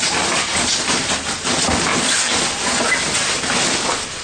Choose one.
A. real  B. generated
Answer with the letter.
A